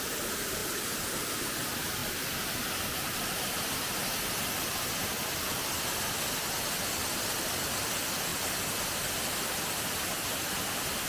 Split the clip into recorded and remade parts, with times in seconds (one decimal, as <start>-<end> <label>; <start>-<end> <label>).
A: 0.0-0.6 recorded; 0.6-1.4 remade; 1.4-2.0 recorded; 2.0-5.4 remade; 5.4-8.3 recorded; 8.3-8.9 remade; 8.9-11.1 recorded